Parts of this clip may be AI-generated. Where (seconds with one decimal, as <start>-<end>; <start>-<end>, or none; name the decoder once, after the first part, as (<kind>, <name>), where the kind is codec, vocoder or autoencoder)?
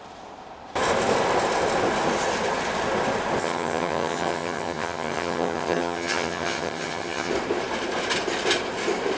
3.4-7.3 (vocoder, HiFi-GAN)